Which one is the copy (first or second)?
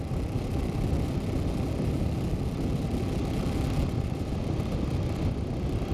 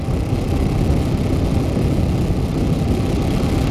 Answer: first